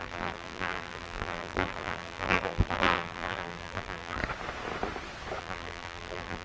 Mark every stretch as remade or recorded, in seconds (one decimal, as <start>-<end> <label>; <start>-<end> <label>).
0.0-4.2 remade; 4.2-5.4 recorded; 5.4-6.4 remade

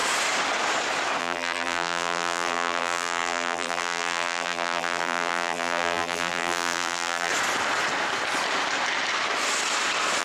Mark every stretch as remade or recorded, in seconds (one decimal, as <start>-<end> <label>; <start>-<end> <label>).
0.0-1.2 recorded; 1.2-7.3 remade; 7.3-10.2 recorded

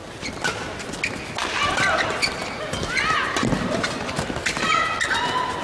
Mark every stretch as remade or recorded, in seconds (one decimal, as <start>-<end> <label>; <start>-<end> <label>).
0.0-5.6 recorded